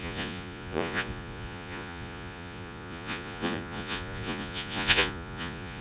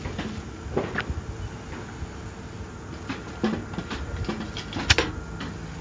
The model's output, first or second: first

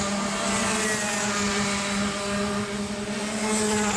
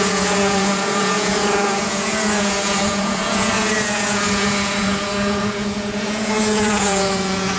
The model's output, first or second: second